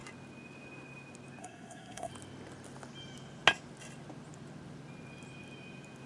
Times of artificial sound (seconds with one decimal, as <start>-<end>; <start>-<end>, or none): 1.4-2.1